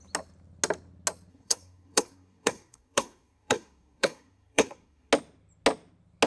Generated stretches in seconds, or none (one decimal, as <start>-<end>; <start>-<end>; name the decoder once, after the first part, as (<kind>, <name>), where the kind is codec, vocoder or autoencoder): 1.3-5.1 (codec, SNAC)